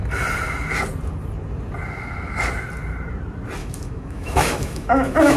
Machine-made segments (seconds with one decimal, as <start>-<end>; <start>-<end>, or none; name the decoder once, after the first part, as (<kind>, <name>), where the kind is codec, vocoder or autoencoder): 3.6-5.4 (autoencoder, DAC-VAE)